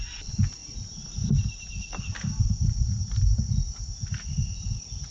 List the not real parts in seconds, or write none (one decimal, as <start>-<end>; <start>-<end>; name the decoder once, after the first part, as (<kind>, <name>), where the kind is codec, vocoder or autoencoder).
0.6-3.0 (vocoder, BigVGAN v2)